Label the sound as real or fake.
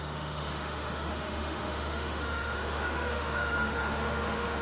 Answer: fake